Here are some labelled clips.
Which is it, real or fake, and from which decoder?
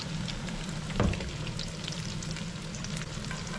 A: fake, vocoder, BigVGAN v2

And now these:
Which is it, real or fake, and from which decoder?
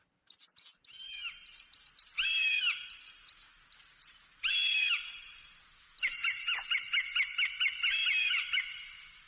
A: real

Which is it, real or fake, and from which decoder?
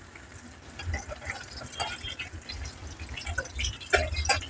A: real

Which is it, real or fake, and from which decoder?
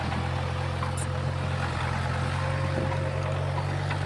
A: real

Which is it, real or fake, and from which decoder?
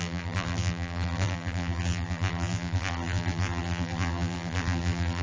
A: fake, vocoder, BigVGAN v2